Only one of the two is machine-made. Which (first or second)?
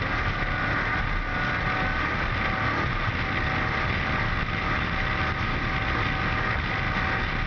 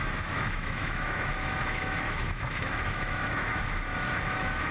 second